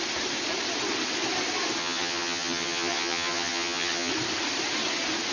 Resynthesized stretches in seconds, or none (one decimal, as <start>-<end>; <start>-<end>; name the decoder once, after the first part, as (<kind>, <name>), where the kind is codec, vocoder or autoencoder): 1.8-4.1 (vocoder, HiFi-GAN)